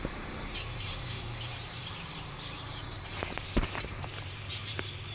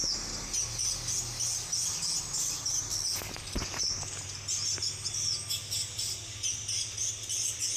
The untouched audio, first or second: second